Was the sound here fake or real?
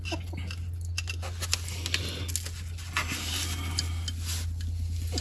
real